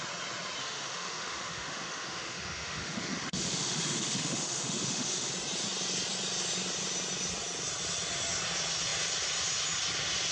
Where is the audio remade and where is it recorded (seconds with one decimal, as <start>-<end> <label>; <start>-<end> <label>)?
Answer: 0.0-0.6 recorded; 0.6-5.3 remade; 5.3-10.3 recorded

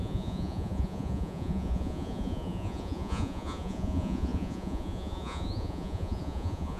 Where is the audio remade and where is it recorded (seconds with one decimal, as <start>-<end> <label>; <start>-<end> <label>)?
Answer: 0.0-6.8 remade